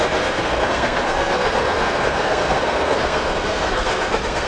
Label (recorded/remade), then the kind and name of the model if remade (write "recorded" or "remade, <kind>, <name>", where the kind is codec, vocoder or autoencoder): remade, codec, SNAC